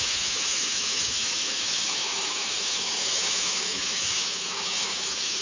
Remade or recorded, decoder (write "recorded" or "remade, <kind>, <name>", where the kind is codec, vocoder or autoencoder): remade, autoencoder, DAC-VAE